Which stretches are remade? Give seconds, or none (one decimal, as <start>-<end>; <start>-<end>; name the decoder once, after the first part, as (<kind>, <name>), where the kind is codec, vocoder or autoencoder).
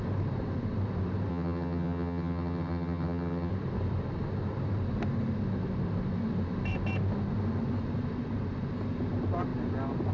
1.3-3.5 (vocoder, HiFi-GAN)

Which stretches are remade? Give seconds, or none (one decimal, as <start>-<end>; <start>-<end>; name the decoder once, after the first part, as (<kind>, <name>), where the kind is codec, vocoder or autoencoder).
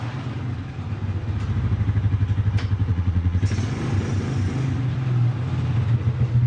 2.9-3.4 (vocoder, Vocos)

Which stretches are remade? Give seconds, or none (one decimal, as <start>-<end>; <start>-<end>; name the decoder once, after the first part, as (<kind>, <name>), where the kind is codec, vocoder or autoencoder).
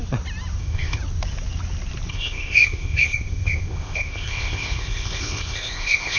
0.6-1.0 (codec, ZipCodec); 2.1-6.2